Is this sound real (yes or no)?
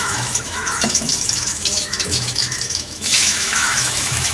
no